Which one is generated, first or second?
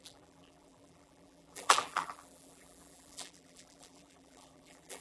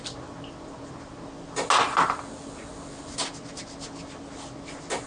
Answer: first